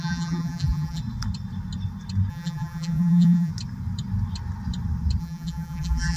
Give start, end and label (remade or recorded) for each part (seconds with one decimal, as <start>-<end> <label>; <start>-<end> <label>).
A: 0.0-1.0 remade; 1.0-2.3 recorded; 2.3-3.5 remade; 3.5-5.2 recorded; 5.2-6.2 remade